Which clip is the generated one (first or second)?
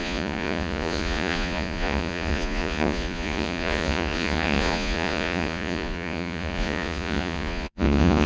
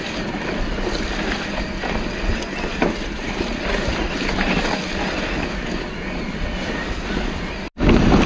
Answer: first